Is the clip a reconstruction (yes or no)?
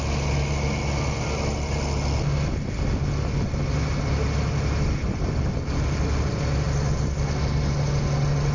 no